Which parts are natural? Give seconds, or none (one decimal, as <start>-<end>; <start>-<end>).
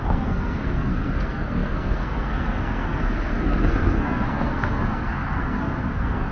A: none